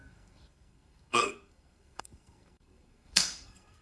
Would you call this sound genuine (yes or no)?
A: no